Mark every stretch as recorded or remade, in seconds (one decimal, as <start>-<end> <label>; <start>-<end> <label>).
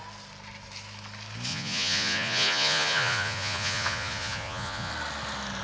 0.0-1.5 recorded; 1.5-4.9 remade; 4.9-5.6 recorded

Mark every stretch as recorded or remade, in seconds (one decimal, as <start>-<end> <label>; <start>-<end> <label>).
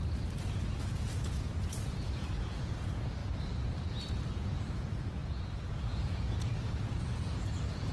0.0-0.9 recorded; 0.9-3.2 remade; 3.2-4.1 recorded; 4.1-7.9 remade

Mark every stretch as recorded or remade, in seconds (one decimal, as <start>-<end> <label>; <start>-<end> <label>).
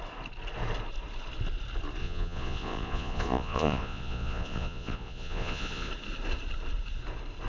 0.0-2.0 recorded; 2.0-5.9 remade; 5.9-7.5 recorded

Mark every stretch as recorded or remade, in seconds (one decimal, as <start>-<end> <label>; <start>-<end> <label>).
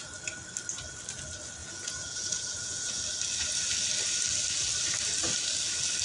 0.0-1.6 recorded; 1.6-3.0 remade; 3.0-6.0 recorded